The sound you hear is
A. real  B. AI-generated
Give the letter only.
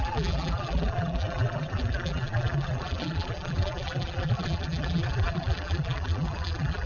B